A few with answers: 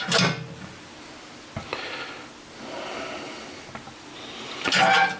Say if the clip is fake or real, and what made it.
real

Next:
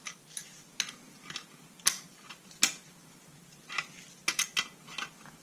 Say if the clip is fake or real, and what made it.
real